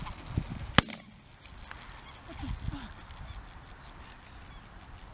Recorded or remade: recorded